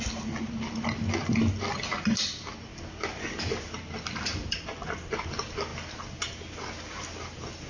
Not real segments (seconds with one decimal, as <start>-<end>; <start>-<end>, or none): none